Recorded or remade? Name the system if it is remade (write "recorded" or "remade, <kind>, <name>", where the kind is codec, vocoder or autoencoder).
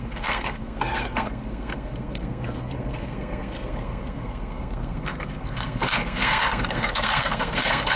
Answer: remade, codec, SNAC